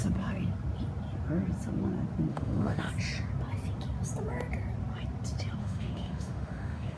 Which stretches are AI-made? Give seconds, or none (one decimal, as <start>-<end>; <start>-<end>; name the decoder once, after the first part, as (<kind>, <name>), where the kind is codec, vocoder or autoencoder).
2.3-2.9 (autoencoder, DAC-VAE); 5.6-7.0